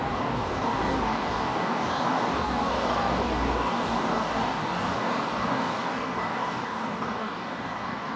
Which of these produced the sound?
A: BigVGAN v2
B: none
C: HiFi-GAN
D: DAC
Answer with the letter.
D